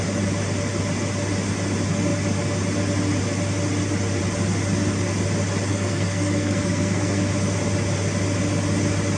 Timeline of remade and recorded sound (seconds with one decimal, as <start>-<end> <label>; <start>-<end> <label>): 0.0-5.7 recorded; 5.7-7.3 remade; 7.3-9.2 recorded